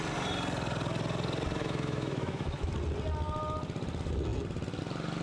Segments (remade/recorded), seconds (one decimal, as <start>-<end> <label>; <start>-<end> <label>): 0.0-1.6 recorded; 1.6-2.7 remade; 2.7-5.2 recorded